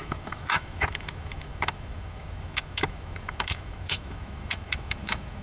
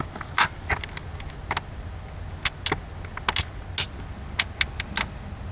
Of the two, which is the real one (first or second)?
second